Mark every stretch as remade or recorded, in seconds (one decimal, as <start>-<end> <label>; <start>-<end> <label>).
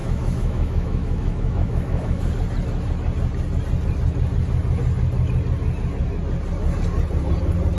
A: 0.0-2.2 remade; 2.2-7.8 recorded